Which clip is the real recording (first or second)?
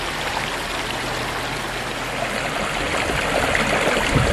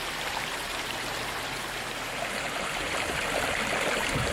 first